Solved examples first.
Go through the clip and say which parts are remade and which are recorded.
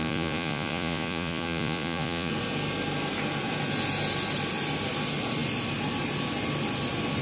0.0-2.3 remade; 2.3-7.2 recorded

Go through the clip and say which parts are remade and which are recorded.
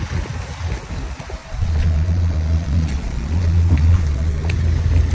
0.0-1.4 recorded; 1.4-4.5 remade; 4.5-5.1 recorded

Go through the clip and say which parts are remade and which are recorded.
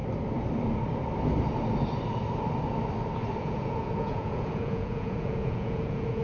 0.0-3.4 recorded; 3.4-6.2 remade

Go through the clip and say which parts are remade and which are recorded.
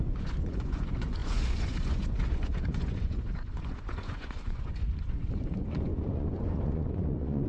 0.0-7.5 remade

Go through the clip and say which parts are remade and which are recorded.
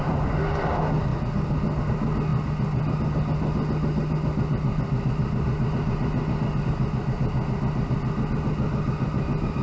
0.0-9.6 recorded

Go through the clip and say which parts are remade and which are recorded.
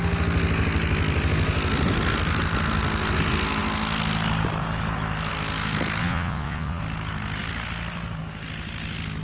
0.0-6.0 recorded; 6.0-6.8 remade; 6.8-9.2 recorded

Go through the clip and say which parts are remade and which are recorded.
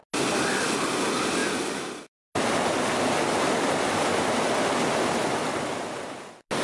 0.0-6.6 recorded